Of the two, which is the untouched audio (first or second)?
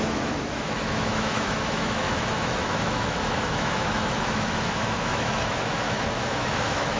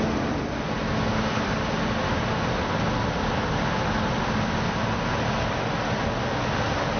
second